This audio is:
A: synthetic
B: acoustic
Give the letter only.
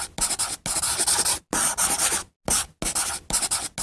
B